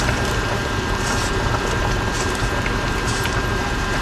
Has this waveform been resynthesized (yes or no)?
yes